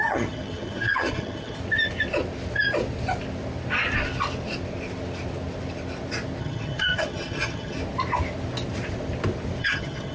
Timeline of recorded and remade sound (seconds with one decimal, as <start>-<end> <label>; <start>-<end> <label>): 0.0-1.6 remade; 1.6-6.4 recorded; 6.4-7.8 remade; 7.8-9.6 recorded; 9.6-10.1 remade